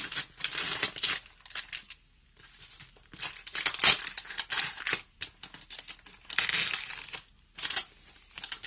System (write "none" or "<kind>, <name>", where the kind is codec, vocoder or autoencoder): none